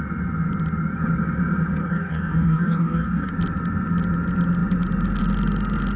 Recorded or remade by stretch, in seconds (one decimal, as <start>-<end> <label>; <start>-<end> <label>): 0.0-1.8 recorded; 1.8-3.3 remade; 3.3-6.0 recorded